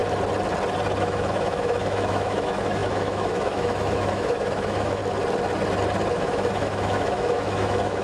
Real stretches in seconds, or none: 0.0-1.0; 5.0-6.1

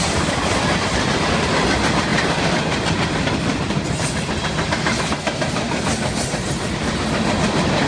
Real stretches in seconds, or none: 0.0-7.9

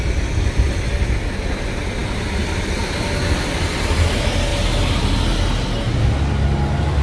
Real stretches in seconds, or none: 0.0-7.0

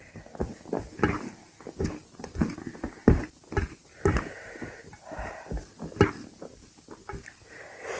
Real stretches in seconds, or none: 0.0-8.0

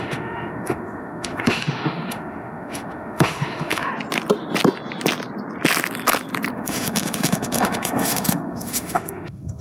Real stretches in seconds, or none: 3.9-6.5